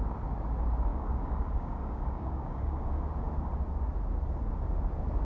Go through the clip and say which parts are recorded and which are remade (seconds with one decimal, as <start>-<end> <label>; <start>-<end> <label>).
0.0-0.9 recorded; 0.9-3.0 remade; 3.0-5.2 recorded

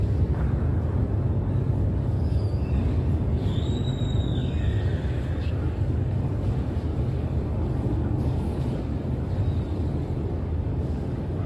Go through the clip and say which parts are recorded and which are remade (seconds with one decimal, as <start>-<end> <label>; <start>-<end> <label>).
0.0-11.5 remade